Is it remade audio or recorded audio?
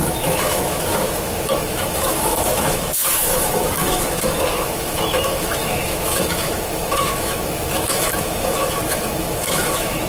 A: remade